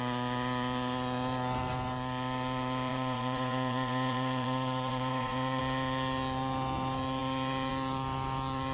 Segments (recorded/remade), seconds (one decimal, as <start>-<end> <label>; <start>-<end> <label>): 0.0-2.9 recorded; 2.9-5.6 remade; 5.6-8.7 recorded